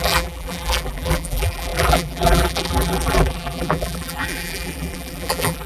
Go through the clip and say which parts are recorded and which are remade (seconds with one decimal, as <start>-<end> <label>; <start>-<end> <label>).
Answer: 0.0-5.7 remade